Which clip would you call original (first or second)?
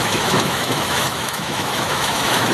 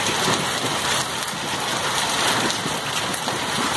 second